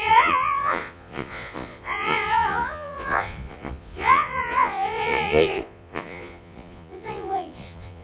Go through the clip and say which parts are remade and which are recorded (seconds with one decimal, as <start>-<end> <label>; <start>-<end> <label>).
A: 0.0-8.0 remade